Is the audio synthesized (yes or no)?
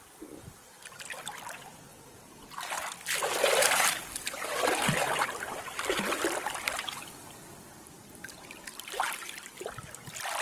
yes